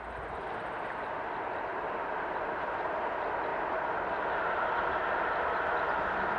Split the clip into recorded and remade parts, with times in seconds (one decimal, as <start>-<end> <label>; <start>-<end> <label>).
0.0-1.7 recorded; 1.7-2.6 remade; 2.6-6.4 recorded